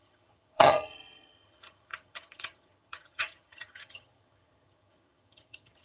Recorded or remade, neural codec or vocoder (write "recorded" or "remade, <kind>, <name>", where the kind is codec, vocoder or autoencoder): remade, vocoder, HiFi-GAN